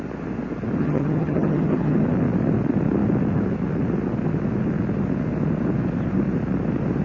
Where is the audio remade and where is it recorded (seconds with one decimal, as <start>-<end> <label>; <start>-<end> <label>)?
0.0-0.8 recorded; 0.8-2.0 remade; 2.0-7.0 recorded